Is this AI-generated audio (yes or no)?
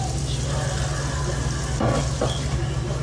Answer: no